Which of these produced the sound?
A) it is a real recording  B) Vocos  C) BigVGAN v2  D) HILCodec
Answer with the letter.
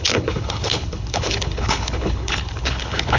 D